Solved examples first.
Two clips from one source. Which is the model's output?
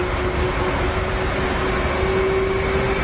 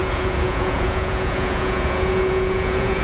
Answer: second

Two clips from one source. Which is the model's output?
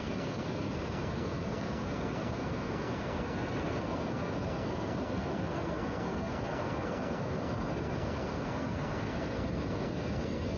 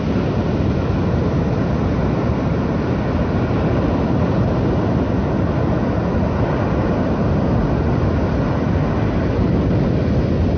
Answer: first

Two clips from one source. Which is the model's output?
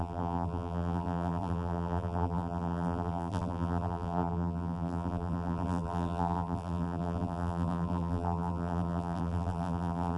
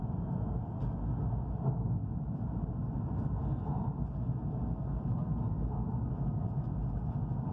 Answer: first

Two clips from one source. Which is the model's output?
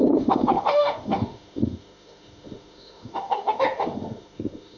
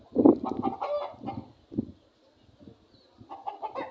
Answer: first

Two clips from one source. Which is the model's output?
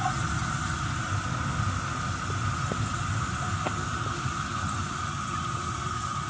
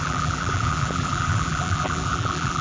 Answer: second